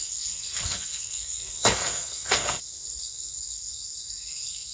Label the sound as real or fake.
fake